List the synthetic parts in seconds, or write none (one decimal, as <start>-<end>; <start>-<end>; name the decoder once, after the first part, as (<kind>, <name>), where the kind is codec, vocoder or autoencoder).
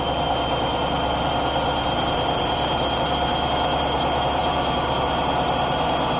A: none